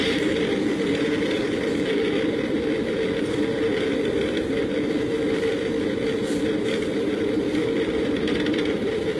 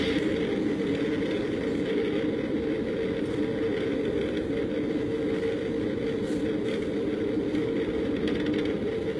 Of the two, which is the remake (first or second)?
first